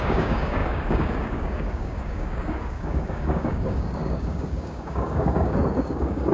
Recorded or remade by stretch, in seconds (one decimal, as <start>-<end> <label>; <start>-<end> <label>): 0.0-6.3 remade